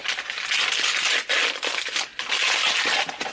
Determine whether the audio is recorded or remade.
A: recorded